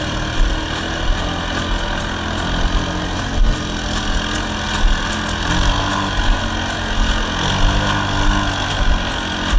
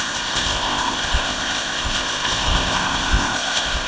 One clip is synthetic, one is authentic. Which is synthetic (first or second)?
second